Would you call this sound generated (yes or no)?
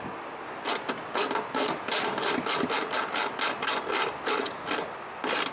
no